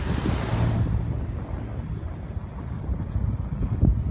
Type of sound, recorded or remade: recorded